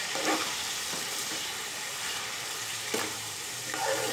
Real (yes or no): no